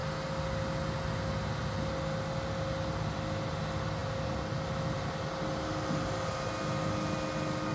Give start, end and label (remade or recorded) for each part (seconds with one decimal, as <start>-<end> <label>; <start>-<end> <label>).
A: 0.0-7.7 recorded